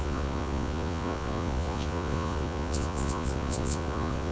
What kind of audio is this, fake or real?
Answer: fake